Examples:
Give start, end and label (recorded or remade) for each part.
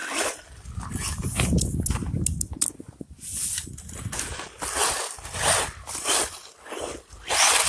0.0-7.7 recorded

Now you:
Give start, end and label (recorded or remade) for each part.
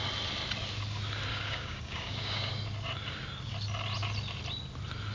0.0-1.3 recorded; 1.3-2.5 remade; 2.5-5.1 recorded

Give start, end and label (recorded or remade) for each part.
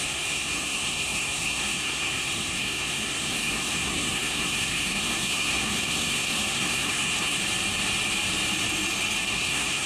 0.0-7.4 remade; 7.4-9.3 recorded; 9.3-9.9 remade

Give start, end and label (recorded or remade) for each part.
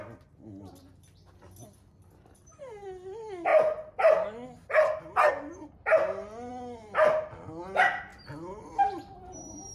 0.0-9.7 recorded